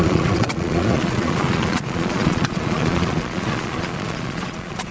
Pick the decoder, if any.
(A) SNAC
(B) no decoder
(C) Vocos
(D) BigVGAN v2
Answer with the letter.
C